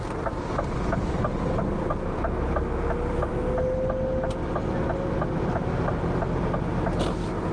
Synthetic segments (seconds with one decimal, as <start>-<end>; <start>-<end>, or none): none